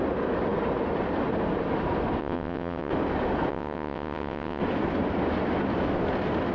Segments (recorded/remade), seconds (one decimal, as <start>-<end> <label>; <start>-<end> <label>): 0.0-2.2 recorded; 2.2-2.9 remade; 2.9-3.5 recorded; 3.5-4.6 remade; 4.6-6.5 recorded

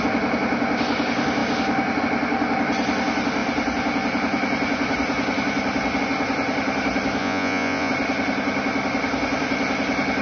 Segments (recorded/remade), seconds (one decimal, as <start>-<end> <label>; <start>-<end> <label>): 0.0-7.2 recorded; 7.2-7.9 remade; 7.9-10.2 recorded